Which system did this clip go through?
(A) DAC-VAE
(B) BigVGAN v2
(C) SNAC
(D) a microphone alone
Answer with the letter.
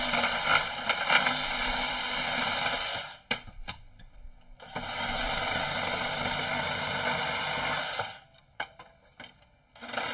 D